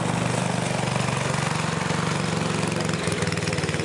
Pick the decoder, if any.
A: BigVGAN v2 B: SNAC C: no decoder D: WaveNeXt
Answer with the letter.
C